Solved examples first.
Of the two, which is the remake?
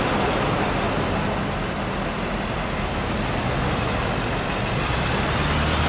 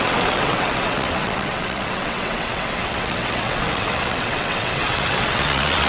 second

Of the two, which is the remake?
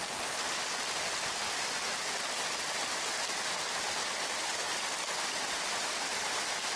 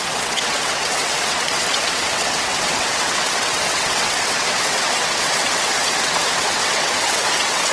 second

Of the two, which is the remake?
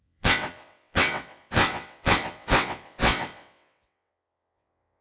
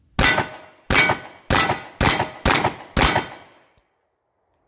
first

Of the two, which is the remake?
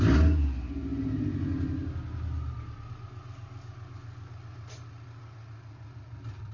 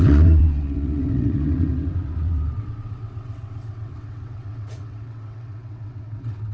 second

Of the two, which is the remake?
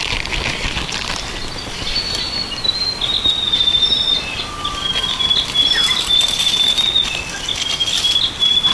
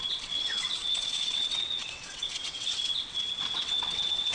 second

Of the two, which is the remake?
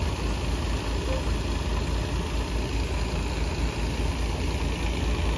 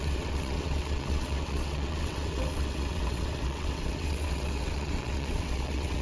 second